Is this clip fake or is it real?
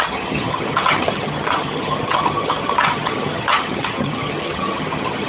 fake